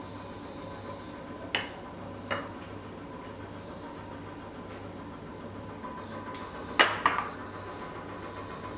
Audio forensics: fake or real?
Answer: real